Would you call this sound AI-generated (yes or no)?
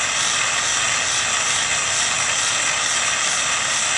no